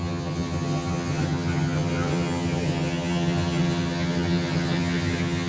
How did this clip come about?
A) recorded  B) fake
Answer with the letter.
B